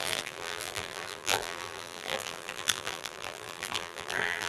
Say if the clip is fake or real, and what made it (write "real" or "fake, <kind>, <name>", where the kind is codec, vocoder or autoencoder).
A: fake, vocoder, BigVGAN v2